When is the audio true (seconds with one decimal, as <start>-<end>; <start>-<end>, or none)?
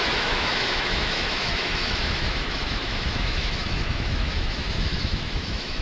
none